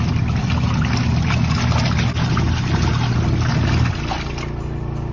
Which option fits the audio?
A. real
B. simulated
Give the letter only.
A